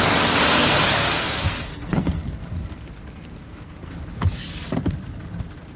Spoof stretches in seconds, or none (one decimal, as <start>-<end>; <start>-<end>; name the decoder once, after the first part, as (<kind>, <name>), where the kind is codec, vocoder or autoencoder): 0.5-4.0 (codec, SNAC)